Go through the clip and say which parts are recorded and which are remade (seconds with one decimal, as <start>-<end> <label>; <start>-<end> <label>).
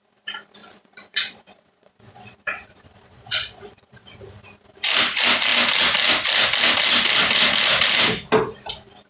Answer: 0.0-0.6 recorded; 0.6-4.2 remade; 4.2-9.1 recorded